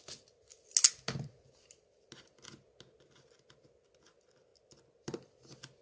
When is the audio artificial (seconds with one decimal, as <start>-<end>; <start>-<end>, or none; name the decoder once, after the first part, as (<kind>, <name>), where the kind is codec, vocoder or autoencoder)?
none